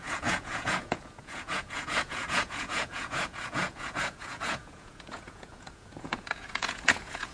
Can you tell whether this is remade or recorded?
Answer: remade